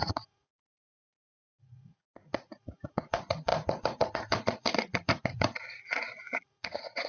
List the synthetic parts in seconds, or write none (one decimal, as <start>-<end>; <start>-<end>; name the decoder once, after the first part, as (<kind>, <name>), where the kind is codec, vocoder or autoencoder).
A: 0.0-7.1 (vocoder, Vocos)